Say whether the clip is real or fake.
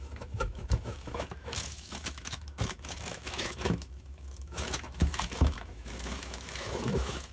fake